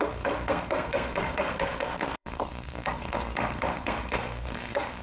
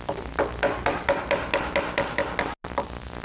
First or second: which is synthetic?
first